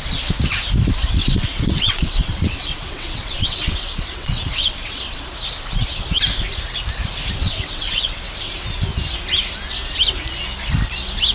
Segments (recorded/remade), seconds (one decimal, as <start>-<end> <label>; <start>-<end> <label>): 0.0-1.2 recorded; 1.2-5.2 remade; 5.2-7.4 recorded; 7.4-8.5 remade; 8.5-11.3 recorded